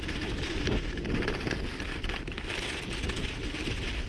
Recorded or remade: recorded